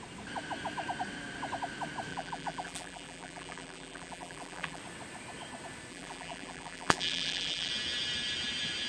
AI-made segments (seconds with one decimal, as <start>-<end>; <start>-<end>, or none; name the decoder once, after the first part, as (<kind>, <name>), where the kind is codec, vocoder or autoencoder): 2.1-4.8 (vocoder, BigVGAN v2); 5.9-7.7